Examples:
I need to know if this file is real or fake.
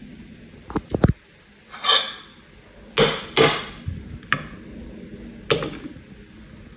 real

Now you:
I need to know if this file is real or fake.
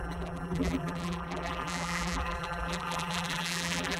fake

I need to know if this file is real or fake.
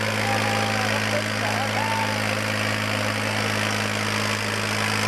real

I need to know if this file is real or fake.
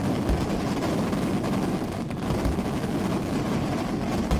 real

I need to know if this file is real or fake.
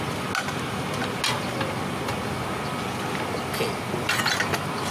real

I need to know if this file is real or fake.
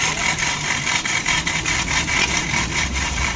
fake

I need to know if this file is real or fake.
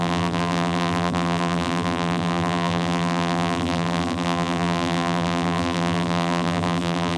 fake